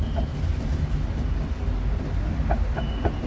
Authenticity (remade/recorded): recorded